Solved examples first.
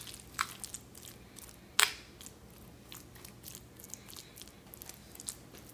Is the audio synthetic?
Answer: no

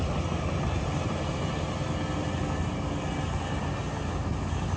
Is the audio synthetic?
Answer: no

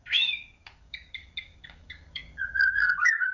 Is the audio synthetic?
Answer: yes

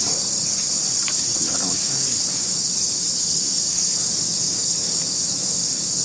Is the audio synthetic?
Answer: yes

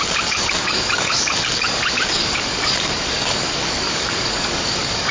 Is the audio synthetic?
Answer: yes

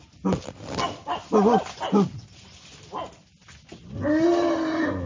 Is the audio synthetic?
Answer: no